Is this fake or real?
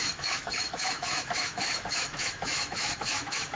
fake